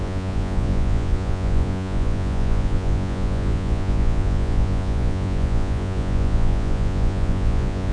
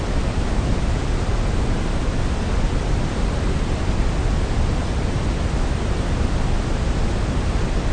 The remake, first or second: first